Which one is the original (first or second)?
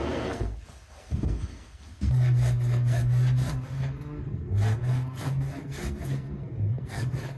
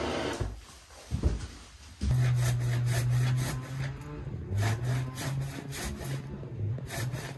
second